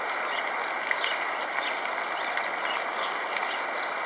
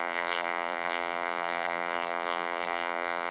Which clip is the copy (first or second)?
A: second